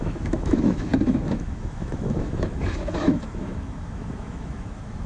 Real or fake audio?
fake